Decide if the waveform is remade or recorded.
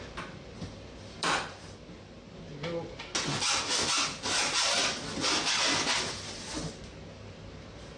recorded